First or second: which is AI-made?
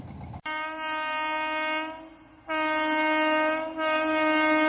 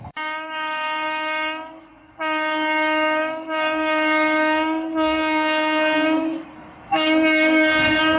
second